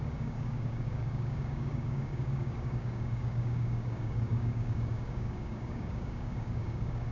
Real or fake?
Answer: fake